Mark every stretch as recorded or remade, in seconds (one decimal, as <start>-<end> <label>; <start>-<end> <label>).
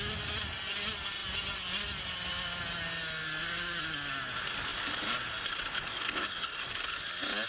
0.0-7.5 recorded